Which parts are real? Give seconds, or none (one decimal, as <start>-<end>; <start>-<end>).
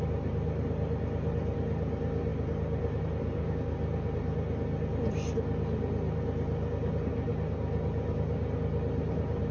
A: 0.0-9.5